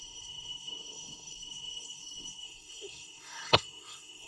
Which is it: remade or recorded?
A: remade